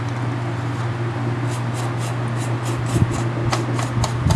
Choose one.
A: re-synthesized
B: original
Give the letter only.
B